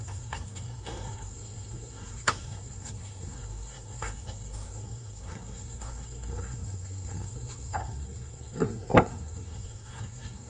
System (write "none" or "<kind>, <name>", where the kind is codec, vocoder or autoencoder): codec, SNAC